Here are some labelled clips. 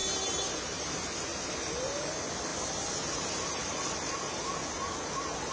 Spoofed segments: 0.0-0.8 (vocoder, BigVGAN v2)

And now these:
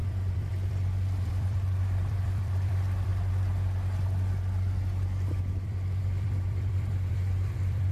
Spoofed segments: 0.0-3.1 (vocoder, BigVGAN v2); 5.5-7.9

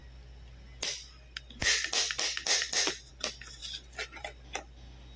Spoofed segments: none

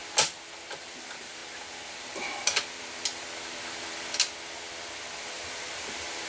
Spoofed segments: 0.8-1.4 (vocoder, BigVGAN v2); 5.2-6.3

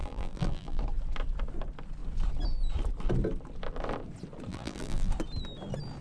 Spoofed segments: 0.0-0.8 (vocoder, BigVGAN v2); 4.5-5.1